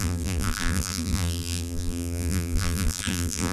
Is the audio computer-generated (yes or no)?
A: yes